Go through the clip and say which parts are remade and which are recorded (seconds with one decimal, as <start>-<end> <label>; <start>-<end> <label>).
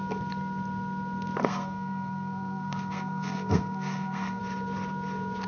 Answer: 0.0-1.4 recorded; 1.4-4.4 remade; 4.4-5.5 recorded